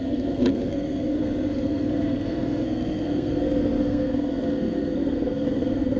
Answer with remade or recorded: remade